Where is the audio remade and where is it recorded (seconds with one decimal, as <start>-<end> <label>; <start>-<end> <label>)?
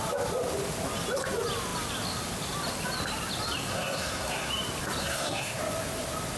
0.0-3.7 recorded; 3.7-4.5 remade; 4.5-5.0 recorded; 5.0-5.6 remade; 5.6-6.4 recorded